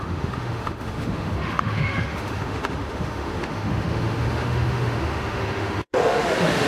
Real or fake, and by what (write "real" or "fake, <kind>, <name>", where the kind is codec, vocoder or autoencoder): fake, autoencoder, DAC-VAE